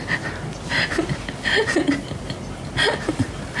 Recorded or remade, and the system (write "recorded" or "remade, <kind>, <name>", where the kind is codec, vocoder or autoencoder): recorded